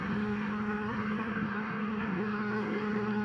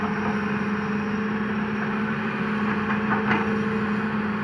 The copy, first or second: first